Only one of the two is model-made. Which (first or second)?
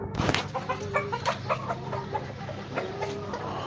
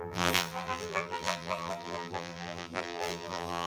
second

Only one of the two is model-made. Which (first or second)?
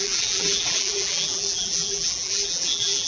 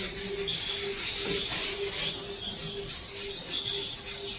first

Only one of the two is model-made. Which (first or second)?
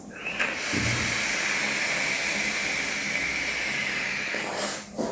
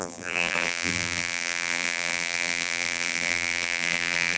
second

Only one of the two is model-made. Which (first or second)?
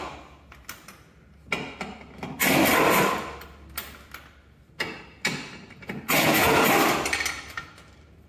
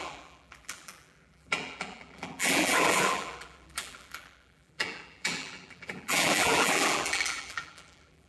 second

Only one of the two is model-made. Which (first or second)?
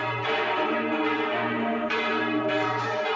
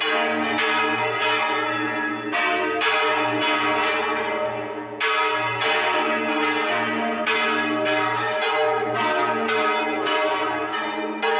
first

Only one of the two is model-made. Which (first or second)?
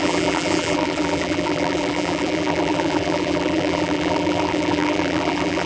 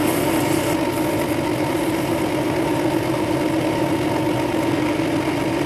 first